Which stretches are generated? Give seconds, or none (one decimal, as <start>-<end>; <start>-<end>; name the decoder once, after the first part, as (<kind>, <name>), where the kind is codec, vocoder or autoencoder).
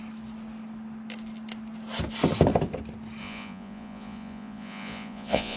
3.2-5.6 (vocoder, Vocos)